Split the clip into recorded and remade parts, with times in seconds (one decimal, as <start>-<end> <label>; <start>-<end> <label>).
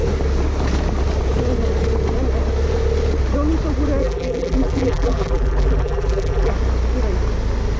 0.0-4.0 recorded; 4.0-6.5 remade; 6.5-7.8 recorded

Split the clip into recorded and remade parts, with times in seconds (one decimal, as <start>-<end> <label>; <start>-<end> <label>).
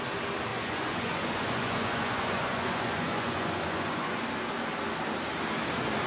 0.0-0.5 recorded; 0.5-4.2 remade; 4.2-6.1 recorded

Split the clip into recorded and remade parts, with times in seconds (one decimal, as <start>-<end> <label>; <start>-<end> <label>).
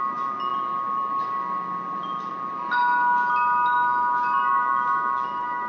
0.0-5.7 recorded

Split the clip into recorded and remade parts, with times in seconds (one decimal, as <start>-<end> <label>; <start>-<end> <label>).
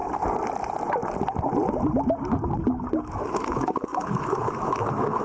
0.0-3.1 recorded; 3.1-5.2 remade